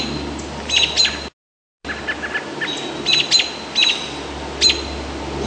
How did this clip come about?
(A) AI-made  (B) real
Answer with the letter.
B